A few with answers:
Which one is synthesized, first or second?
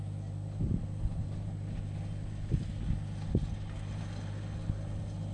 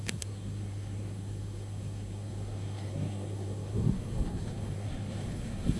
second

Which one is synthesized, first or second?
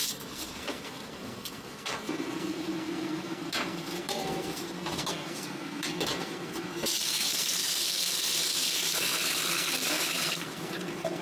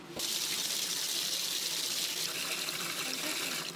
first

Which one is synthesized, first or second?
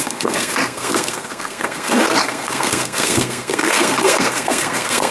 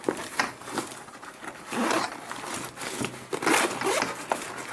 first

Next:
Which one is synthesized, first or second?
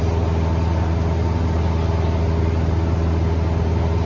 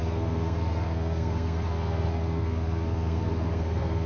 second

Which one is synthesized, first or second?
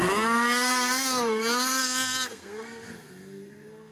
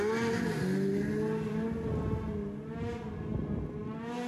first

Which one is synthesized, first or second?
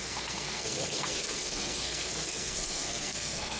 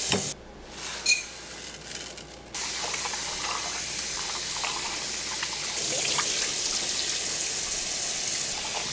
first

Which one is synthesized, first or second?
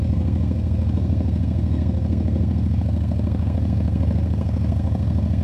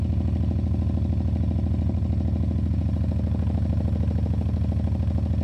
first